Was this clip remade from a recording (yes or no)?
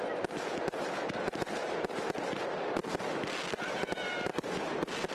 no